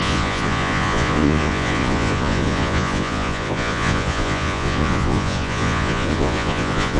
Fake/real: fake